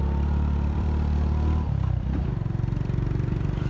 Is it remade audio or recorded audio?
remade